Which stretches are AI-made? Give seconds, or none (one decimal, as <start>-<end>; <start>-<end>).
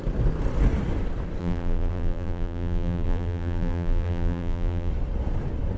1.4-4.9